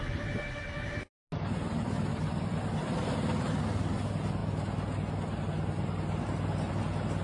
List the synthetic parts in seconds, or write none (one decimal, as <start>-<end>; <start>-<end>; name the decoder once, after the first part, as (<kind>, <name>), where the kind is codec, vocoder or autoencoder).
2.1-3.6 (vocoder, BigVGAN v2)